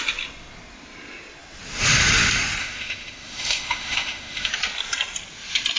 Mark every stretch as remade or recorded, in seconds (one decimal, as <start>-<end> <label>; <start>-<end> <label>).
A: 0.0-2.6 recorded; 2.6-4.5 remade; 4.5-5.8 recorded